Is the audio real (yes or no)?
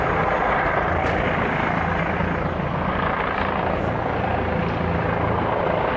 yes